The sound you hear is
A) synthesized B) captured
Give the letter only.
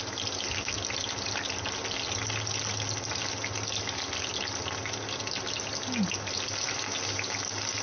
B